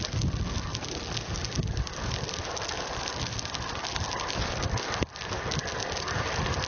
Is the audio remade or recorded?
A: recorded